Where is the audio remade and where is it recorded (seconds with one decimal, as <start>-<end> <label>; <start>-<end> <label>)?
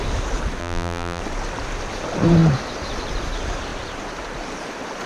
0.0-0.6 recorded; 0.6-1.2 remade; 1.2-5.1 recorded